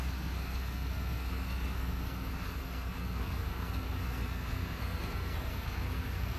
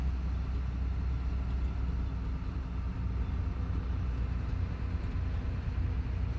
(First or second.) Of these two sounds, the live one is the second